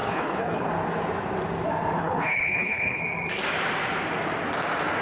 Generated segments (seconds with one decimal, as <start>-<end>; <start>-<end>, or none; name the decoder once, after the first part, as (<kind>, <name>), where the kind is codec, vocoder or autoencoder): 0.0-0.7 (codec, HILCodec); 2.0-3.0